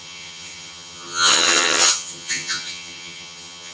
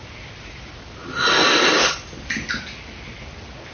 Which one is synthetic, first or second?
first